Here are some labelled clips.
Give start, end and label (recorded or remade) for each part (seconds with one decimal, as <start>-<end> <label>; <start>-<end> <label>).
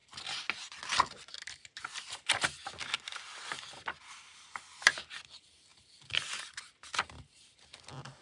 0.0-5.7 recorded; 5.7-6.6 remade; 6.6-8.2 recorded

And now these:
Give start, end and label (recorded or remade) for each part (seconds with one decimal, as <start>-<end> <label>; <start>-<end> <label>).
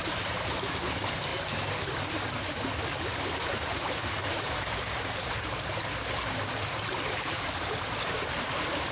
0.0-1.3 remade; 1.3-3.1 recorded; 3.1-5.8 remade; 5.8-6.7 recorded; 6.7-8.9 remade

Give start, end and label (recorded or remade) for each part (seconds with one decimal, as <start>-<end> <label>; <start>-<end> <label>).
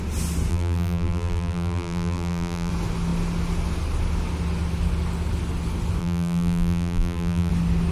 0.0-0.5 recorded; 0.5-2.7 remade; 2.7-6.0 recorded; 6.0-7.5 remade; 7.5-7.9 recorded